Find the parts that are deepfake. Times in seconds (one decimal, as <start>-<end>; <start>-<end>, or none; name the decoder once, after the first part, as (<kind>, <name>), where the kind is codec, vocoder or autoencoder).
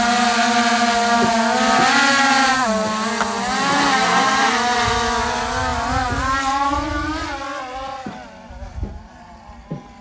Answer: none